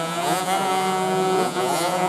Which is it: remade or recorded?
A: remade